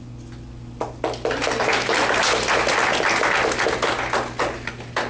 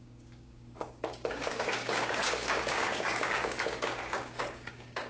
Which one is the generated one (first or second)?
second